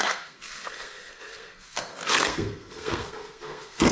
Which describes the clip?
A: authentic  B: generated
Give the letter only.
B